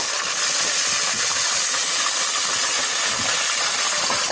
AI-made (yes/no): no